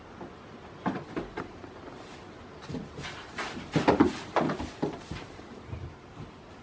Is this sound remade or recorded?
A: recorded